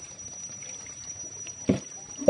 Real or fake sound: fake